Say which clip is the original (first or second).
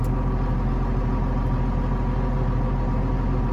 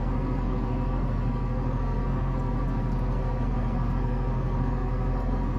first